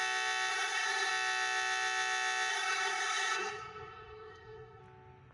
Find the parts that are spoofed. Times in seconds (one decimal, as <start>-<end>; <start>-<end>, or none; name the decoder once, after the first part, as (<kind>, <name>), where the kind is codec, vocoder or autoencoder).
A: 0.5-1.1 (codec, SNAC); 2.5-4.8